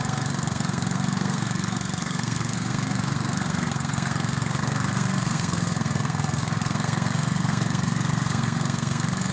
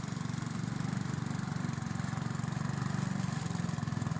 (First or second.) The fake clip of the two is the first